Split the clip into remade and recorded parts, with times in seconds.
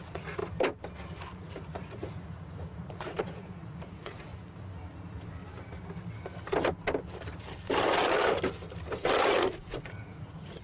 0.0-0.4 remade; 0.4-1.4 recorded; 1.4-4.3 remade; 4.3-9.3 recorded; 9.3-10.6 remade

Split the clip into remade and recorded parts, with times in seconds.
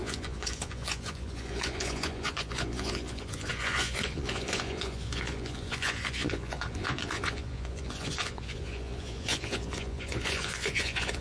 0.0-11.2 remade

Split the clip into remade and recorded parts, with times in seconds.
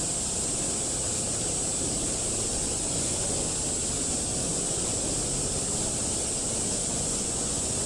0.0-2.5 recorded; 2.5-3.5 remade; 3.5-4.4 recorded; 4.4-5.0 remade; 5.0-6.8 recorded; 6.8-7.9 remade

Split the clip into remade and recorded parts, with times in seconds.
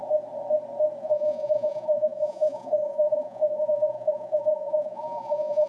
0.0-1.0 recorded; 1.0-5.7 remade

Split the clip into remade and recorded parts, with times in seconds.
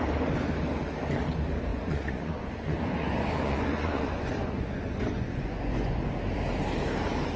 0.0-1.7 recorded; 1.7-6.0 remade; 6.0-7.4 recorded